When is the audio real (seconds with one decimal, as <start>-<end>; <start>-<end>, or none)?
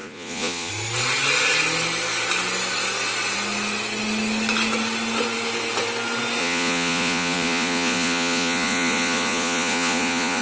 0.7-6.4